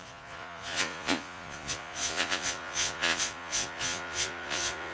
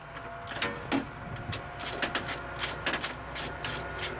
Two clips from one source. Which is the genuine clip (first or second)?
second